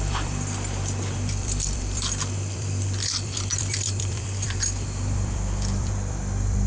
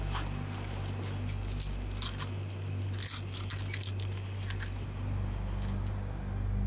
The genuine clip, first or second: second